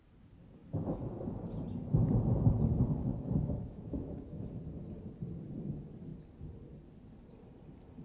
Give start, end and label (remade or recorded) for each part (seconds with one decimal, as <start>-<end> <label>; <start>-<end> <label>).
0.0-0.6 recorded; 0.6-1.1 remade; 1.1-3.1 recorded; 3.1-4.5 remade; 4.5-8.0 recorded

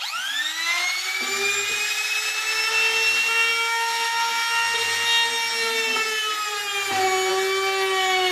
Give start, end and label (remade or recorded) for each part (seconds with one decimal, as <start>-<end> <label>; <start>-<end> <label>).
0.0-8.3 recorded

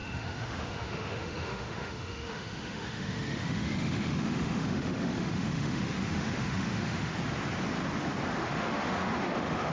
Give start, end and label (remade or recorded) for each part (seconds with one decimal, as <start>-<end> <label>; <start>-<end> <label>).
0.0-7.1 remade; 7.1-8.3 recorded; 8.3-9.7 remade

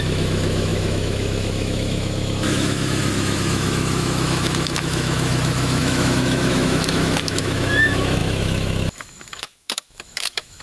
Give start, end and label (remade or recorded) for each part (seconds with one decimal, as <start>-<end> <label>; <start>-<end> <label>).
0.0-10.6 remade

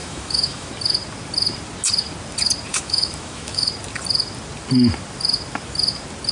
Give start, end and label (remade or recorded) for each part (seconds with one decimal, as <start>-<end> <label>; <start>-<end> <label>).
0.0-0.7 remade; 0.7-2.7 recorded; 2.7-3.7 remade; 3.7-6.3 recorded

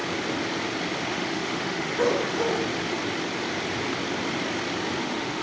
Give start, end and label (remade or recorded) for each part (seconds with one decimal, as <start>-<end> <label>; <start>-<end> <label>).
0.0-1.1 recorded; 1.1-1.9 remade; 1.9-5.0 recorded; 5.0-5.4 remade